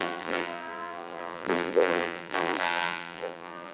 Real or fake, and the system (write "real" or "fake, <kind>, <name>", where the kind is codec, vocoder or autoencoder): fake, vocoder, BigVGAN v2